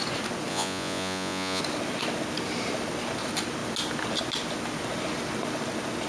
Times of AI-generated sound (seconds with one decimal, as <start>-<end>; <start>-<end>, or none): 0.5-1.6